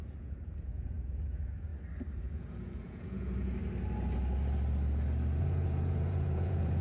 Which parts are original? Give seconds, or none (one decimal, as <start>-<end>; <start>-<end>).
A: 1.7-2.2; 3.6-5.4